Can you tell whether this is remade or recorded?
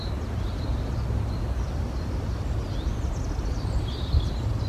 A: recorded